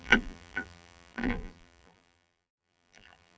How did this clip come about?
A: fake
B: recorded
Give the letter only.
A